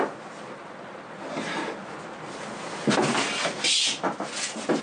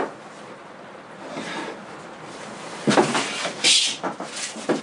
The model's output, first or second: second